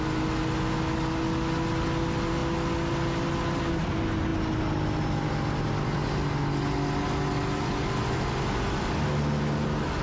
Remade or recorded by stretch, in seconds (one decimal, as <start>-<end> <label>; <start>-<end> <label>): 0.0-10.0 recorded